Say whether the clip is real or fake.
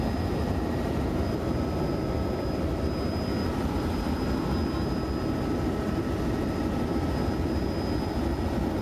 real